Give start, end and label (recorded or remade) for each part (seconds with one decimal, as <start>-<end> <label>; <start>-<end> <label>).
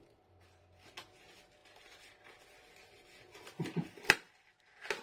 0.0-5.0 recorded